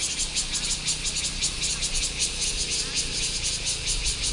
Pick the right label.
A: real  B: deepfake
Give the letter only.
A